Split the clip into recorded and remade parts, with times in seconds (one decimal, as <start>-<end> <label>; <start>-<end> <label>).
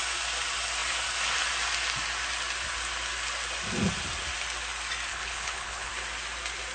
0.0-5.1 recorded; 5.1-5.9 remade; 5.9-6.7 recorded